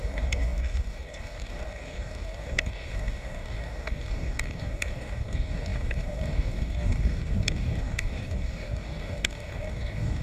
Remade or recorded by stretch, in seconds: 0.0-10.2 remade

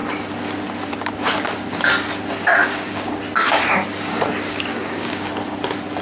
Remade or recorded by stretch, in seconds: 0.0-2.6 recorded; 2.6-3.2 remade; 3.2-4.7 recorded; 4.7-5.3 remade; 5.3-6.0 recorded

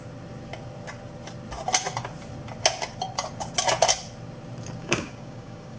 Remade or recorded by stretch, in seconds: 0.0-4.8 recorded; 4.8-5.8 remade

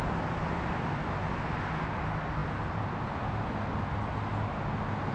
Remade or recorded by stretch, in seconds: 0.0-5.1 recorded

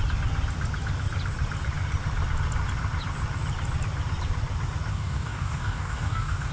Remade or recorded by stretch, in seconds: 0.0-4.9 recorded; 4.9-6.5 remade

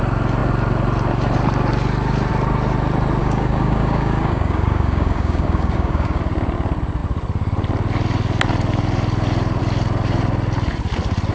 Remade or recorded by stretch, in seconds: 0.0-3.2 recorded; 3.2-6.2 remade; 6.2-11.3 recorded